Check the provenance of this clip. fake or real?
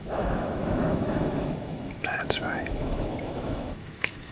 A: fake